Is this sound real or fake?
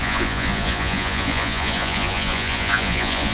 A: fake